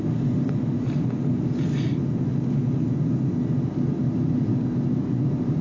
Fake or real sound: real